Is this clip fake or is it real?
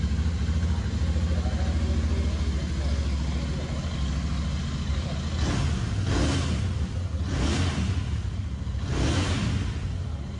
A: real